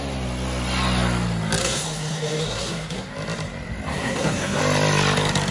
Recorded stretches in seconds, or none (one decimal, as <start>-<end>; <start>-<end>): 0.0-1.6; 3.1-3.9; 4.6-5.5